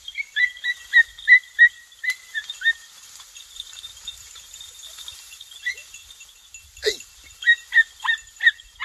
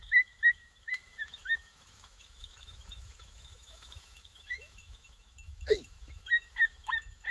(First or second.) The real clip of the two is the first